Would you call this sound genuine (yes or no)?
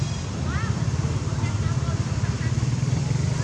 yes